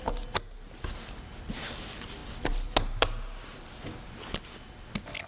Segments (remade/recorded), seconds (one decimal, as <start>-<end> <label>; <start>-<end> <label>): 0.0-5.3 recorded